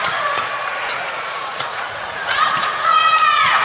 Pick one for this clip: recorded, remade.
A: remade